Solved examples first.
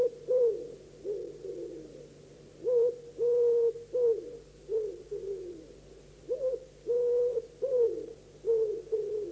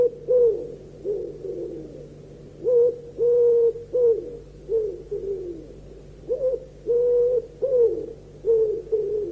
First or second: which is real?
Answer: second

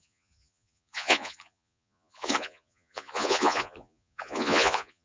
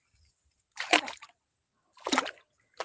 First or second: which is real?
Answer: second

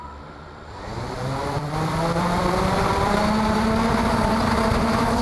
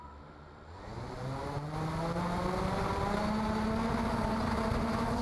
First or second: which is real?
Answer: second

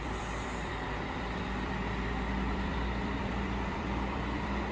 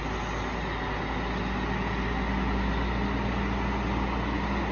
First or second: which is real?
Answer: second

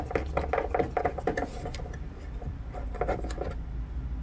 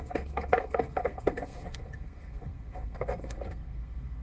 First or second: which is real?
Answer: first